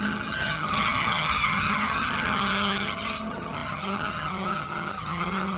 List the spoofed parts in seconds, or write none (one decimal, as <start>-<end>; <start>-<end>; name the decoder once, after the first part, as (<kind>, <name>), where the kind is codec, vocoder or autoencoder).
0.0-5.6 (vocoder, HiFi-GAN)